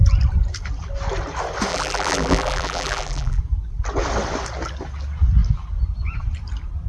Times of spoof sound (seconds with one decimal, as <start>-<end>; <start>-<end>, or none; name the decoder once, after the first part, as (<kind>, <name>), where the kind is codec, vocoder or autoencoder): 1.7-3.4 (vocoder, BigVGAN v2)